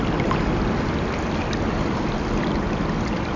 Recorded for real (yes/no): yes